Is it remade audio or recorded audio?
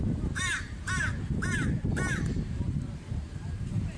remade